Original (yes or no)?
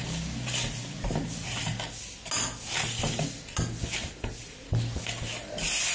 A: yes